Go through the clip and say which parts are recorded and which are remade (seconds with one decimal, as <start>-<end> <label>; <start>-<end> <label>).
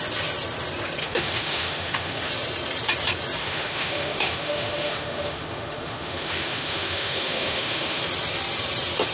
0.0-1.0 recorded; 1.0-2.3 remade; 2.3-3.4 recorded; 3.4-8.0 remade; 8.0-9.1 recorded